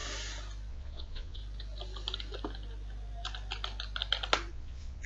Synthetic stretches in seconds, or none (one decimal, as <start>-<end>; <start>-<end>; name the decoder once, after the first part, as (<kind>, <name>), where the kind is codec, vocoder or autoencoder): 0.7-1.4 (vocoder, Vocos); 4.5-5.1